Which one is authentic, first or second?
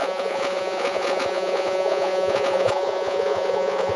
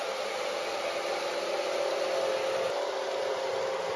second